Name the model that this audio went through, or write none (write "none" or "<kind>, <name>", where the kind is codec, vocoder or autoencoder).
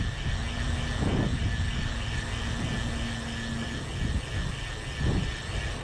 none